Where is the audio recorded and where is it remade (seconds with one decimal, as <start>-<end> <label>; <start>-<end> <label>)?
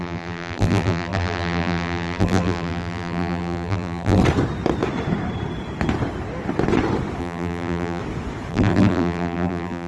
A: 0.0-4.2 remade; 4.2-7.2 recorded; 7.2-8.0 remade; 8.0-8.5 recorded; 8.5-9.9 remade